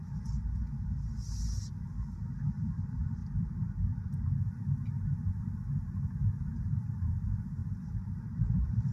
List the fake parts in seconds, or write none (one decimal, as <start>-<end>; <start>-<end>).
1.8-3.2; 6.6-8.9